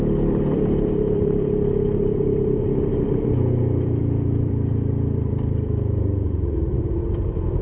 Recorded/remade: remade